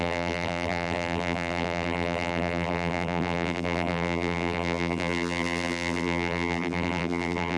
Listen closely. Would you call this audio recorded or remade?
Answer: remade